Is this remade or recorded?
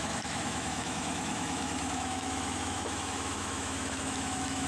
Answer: remade